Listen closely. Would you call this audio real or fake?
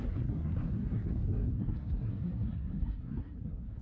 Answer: fake